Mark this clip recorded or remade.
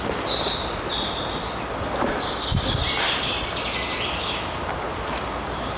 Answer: recorded